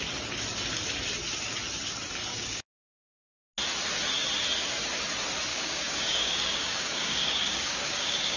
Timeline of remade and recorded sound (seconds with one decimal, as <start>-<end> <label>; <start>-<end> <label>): 0.0-2.3 recorded; 2.3-2.9 remade; 2.9-5.5 recorded; 5.5-8.4 remade